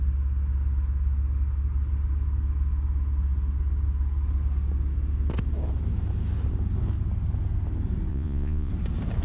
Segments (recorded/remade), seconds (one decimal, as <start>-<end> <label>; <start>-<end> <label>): 0.0-8.1 recorded; 8.1-8.7 remade; 8.7-9.2 recorded